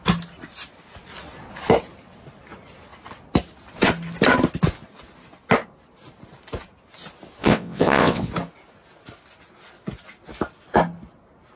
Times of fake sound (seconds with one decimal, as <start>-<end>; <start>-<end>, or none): 7.4-8.3